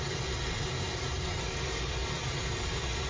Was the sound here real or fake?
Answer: real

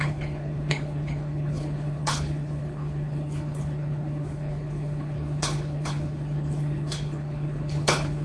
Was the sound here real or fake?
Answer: fake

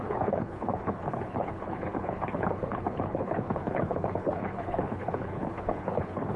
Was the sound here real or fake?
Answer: fake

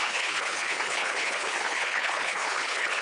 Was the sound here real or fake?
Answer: fake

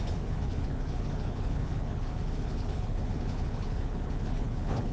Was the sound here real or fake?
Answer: fake